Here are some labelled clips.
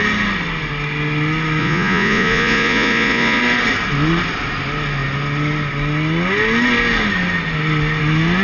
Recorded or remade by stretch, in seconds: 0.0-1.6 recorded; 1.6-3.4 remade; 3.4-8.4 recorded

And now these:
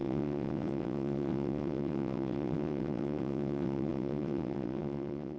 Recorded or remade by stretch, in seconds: 0.0-5.4 remade

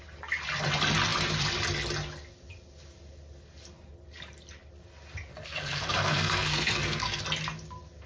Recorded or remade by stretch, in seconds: 0.0-5.3 recorded; 5.3-7.2 remade; 7.2-8.1 recorded

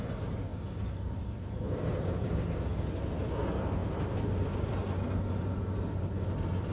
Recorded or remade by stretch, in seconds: 0.0-6.7 recorded